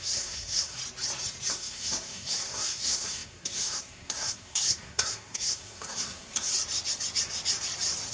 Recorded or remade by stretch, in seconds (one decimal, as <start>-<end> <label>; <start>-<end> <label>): 0.0-0.8 remade; 0.8-1.5 recorded; 1.5-6.5 remade; 6.5-8.1 recorded